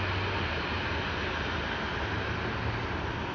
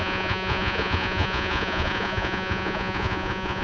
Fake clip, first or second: second